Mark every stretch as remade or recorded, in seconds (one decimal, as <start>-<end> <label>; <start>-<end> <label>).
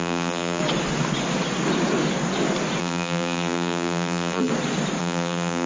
0.0-0.6 remade; 0.6-2.8 recorded; 2.8-4.5 remade; 4.5-5.0 recorded; 5.0-5.7 remade